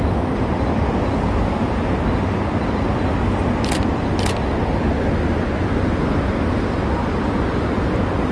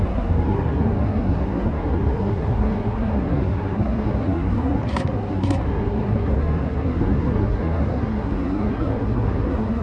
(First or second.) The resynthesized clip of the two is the second